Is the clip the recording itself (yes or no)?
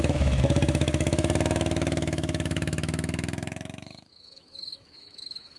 no